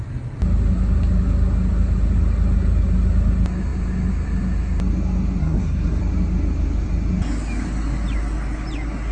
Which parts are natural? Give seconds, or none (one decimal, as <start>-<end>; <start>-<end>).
0.0-5.4; 6.0-9.1